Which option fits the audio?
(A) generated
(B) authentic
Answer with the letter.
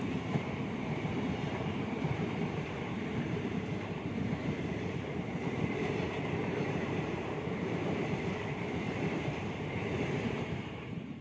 A